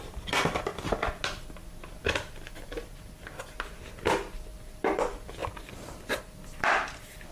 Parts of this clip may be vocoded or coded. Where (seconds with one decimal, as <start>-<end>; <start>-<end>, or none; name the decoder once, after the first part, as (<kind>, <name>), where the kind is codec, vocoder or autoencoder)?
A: 4.5-5.0 (vocoder, BigVGAN v2); 5.4-6.2